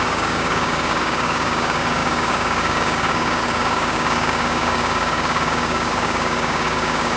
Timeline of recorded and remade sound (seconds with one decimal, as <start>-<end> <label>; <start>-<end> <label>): 0.0-7.2 remade